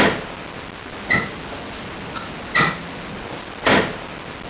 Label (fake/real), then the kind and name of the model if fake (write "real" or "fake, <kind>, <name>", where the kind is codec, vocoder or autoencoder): real